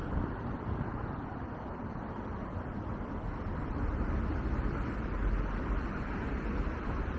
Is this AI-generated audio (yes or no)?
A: no